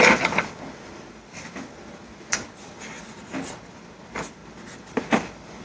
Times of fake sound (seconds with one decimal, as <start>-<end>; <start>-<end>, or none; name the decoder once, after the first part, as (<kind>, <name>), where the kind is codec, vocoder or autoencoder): none

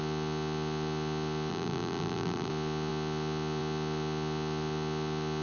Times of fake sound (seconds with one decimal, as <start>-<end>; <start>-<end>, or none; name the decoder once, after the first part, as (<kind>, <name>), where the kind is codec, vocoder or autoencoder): 1.5-2.5 (vocoder, BigVGAN v2)

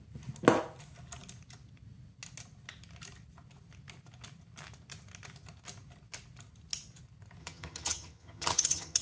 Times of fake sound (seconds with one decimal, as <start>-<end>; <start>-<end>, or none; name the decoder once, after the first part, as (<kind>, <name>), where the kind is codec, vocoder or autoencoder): 7.4-9.0 (vocoder, HiFi-GAN)

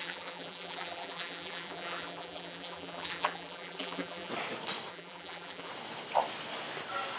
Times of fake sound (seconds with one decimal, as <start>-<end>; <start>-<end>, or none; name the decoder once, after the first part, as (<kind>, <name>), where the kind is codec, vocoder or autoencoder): 0.0-4.3 (vocoder, BigVGAN v2); 4.9-5.7